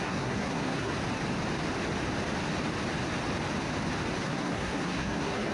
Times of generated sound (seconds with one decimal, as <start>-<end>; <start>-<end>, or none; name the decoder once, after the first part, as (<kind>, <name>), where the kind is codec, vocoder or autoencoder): 0.0-0.9 (codec, SNAC); 4.2-5.5